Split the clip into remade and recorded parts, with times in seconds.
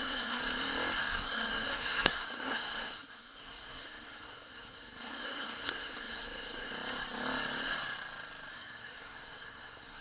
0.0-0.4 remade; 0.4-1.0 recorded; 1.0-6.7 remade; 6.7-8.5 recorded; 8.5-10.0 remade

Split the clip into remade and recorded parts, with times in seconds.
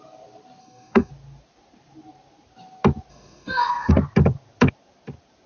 0.0-0.6 recorded; 0.6-1.1 remade; 1.1-3.1 recorded; 3.1-3.9 remade; 3.9-5.5 recorded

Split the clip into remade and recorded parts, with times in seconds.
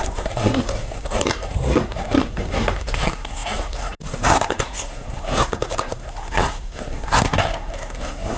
0.0-8.4 remade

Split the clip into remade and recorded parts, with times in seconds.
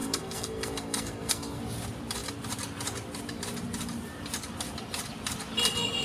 0.0-1.6 remade; 1.6-6.0 recorded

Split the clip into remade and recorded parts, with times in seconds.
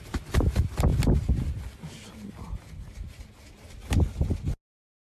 0.0-5.2 recorded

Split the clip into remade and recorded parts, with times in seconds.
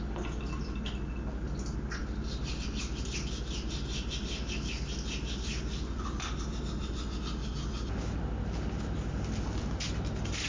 0.0-10.5 recorded